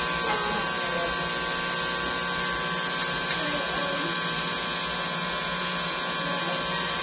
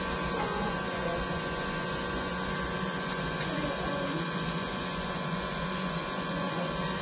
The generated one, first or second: second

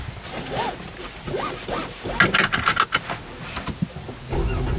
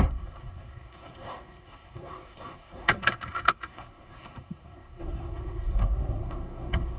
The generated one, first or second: second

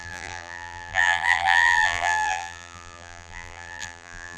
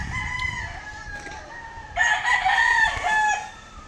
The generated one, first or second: first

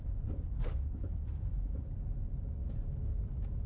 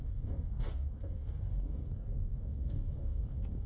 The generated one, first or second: second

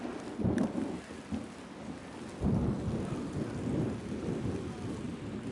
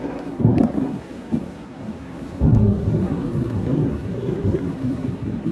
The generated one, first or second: second